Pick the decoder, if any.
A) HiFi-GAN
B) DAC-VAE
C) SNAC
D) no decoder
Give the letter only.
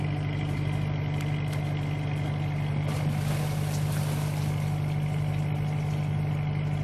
D